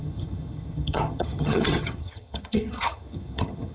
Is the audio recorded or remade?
remade